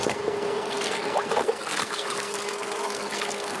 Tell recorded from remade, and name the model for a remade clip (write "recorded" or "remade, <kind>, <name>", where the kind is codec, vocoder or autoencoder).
remade, codec, SNAC